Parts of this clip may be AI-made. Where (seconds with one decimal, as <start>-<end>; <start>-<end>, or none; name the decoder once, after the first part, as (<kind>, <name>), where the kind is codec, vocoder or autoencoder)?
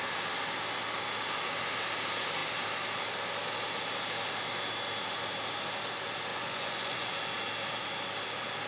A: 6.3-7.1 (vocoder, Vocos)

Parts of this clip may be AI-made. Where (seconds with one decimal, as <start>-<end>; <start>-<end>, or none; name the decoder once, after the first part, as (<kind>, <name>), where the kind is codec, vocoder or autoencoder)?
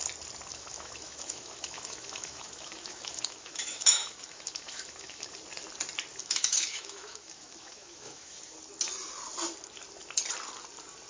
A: 0.5-5.3 (autoencoder, DAC-VAE); 6.2-8.4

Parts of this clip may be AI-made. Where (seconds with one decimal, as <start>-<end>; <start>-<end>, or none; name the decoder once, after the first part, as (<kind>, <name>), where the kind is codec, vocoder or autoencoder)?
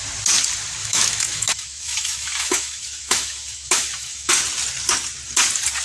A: 0.8-4.3 (autoencoder, DAC-VAE)